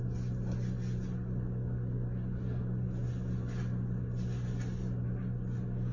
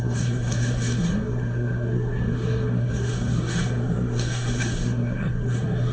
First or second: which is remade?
second